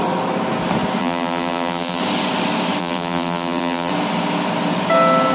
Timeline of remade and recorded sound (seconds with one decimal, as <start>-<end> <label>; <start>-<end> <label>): 0.0-1.0 recorded; 1.0-2.0 remade; 2.0-2.8 recorded; 2.8-3.9 remade; 3.9-5.3 recorded